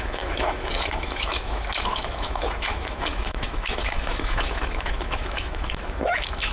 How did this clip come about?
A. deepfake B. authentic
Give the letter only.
A